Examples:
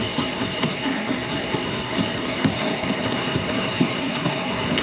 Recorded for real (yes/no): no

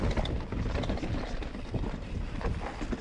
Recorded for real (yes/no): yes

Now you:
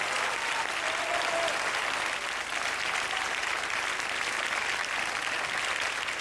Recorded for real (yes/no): yes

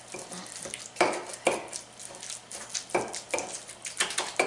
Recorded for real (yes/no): yes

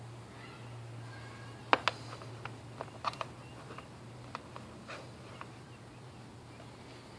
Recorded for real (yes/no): yes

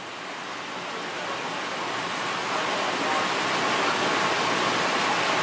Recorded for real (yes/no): yes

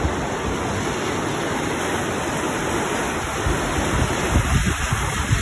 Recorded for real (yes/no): yes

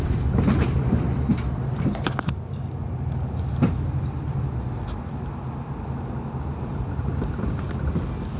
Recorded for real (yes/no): yes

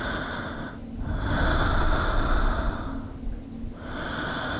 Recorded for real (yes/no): yes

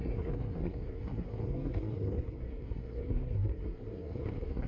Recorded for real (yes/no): no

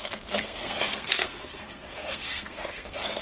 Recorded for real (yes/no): no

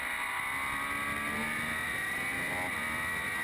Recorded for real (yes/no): yes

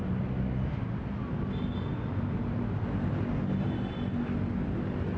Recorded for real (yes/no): yes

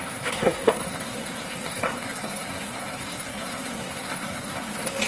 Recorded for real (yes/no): no